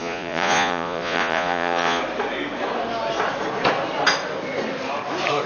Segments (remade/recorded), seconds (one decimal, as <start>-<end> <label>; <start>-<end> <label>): 0.0-2.0 remade; 2.0-5.5 recorded